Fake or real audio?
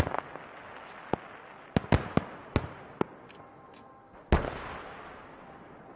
real